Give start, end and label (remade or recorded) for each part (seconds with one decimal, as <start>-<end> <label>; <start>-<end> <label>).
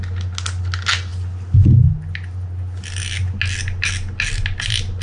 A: 0.0-5.0 recorded